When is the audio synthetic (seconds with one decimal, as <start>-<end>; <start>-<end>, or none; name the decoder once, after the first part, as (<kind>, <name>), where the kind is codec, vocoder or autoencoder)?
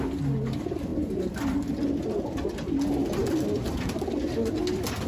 none